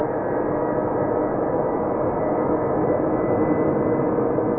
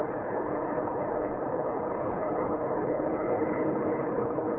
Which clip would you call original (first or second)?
first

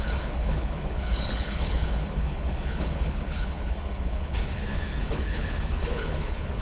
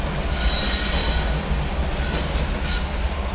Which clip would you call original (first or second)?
second